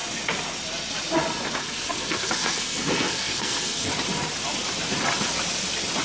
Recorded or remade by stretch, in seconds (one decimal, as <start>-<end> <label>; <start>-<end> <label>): 0.0-1.6 recorded; 1.6-3.9 remade; 3.9-6.0 recorded